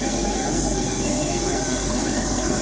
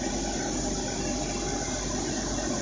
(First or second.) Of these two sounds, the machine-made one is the first